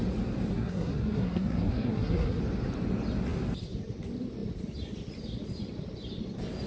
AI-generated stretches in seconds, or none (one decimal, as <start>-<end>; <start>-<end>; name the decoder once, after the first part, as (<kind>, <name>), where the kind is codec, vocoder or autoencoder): 0.5-2.4 (codec, SNAC)